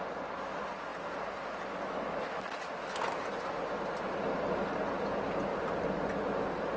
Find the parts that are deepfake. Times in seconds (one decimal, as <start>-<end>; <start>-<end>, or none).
5.5-6.0